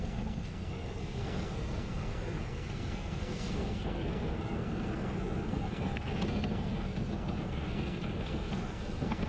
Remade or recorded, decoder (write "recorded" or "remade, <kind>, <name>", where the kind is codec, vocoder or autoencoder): remade, codec, SNAC